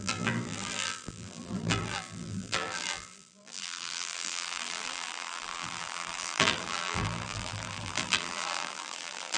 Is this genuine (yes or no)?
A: no